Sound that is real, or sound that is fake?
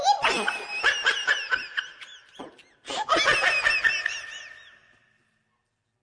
real